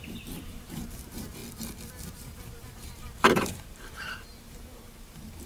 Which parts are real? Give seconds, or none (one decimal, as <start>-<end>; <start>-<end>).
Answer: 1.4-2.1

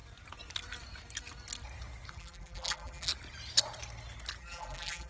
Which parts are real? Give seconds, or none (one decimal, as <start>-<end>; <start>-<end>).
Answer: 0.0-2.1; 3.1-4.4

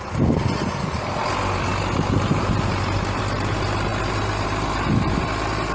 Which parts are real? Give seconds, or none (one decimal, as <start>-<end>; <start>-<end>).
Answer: 0.0-5.7

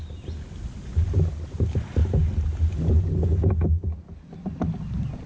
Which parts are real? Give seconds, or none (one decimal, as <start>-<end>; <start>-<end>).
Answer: 0.0-5.3

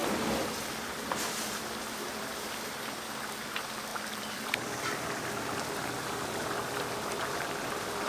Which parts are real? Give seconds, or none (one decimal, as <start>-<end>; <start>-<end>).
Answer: 3.0-3.9; 5.7-8.1

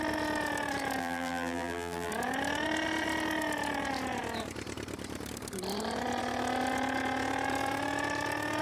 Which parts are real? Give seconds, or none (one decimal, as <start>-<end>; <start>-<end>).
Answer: 0.0-1.0; 2.1-8.6

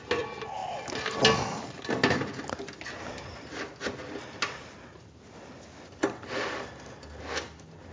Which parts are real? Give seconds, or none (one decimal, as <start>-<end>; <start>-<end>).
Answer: 0.0-7.9